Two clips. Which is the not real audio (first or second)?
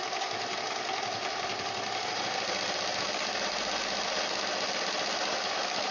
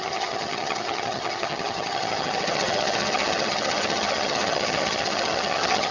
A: second